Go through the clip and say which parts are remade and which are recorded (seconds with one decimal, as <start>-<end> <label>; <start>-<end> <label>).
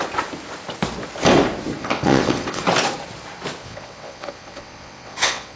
0.0-1.8 recorded; 1.8-2.6 remade; 2.6-3.6 recorded; 3.6-5.6 remade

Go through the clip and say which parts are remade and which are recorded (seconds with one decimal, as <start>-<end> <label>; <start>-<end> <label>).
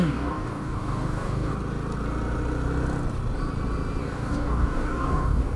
0.0-1.5 remade; 1.5-4.0 recorded; 4.0-5.6 remade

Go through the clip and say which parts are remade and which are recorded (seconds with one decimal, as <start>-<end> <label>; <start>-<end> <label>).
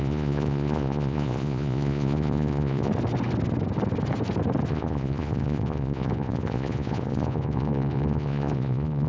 0.0-2.9 remade; 2.9-4.7 recorded; 4.7-9.1 remade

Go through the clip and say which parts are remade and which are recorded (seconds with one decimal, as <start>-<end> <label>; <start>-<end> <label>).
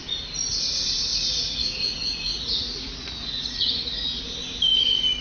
0.0-1.1 recorded; 1.1-4.2 remade; 4.2-5.2 recorded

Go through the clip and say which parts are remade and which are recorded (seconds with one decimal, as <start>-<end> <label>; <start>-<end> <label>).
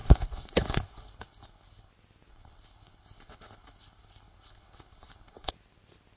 0.0-1.9 remade; 1.9-2.3 recorded; 2.3-5.5 remade; 5.5-6.2 recorded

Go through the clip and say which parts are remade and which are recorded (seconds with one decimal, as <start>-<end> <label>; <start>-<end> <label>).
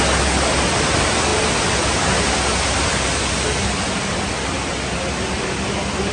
0.0-6.1 recorded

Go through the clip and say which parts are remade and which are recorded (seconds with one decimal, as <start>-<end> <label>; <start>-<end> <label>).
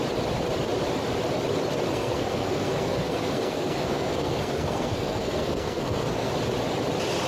0.0-1.9 recorded; 1.9-6.3 remade; 6.3-7.3 recorded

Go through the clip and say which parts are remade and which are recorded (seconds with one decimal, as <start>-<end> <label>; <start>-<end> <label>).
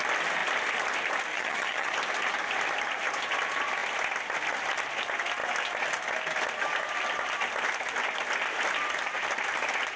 0.0-1.3 recorded; 1.3-1.9 remade; 1.9-10.0 recorded